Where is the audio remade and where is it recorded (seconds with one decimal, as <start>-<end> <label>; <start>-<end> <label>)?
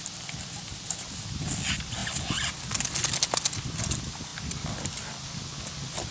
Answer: 0.0-6.1 recorded